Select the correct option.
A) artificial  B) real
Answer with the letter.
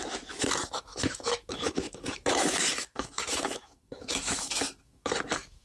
A